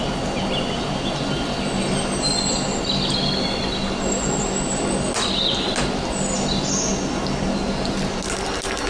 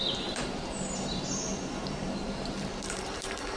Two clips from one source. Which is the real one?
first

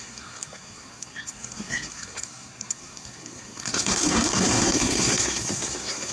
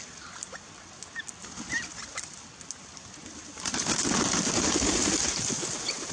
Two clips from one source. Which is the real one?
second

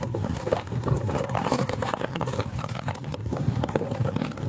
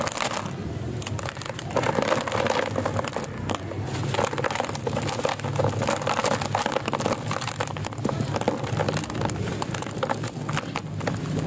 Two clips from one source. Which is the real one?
second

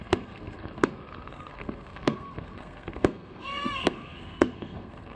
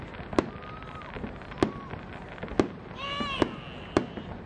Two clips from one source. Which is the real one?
second